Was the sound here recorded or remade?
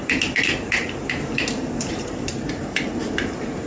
remade